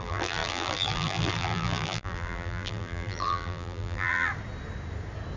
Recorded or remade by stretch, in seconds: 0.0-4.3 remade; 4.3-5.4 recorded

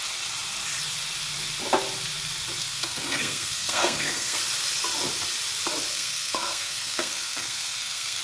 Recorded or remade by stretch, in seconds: 0.0-2.6 recorded; 2.6-4.4 remade; 4.4-5.9 recorded; 5.9-8.2 remade

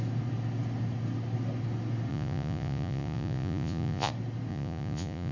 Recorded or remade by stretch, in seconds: 0.0-2.1 recorded; 2.1-4.1 remade; 4.1-4.5 recorded; 4.5-5.3 remade

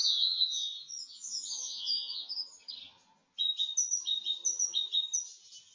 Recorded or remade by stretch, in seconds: 0.0-2.3 remade; 2.3-5.7 recorded

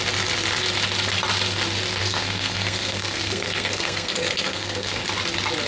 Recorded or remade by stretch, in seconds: 0.0-2.0 recorded; 2.0-5.0 remade; 5.0-5.7 recorded